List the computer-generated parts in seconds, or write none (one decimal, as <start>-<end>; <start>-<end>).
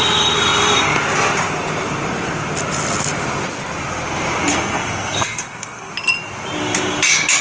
4.5-5.9